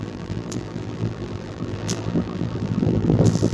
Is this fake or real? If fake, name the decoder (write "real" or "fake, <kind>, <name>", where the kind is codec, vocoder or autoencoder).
fake, vocoder, BigVGAN v2